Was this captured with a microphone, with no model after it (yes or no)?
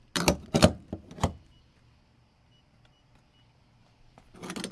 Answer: yes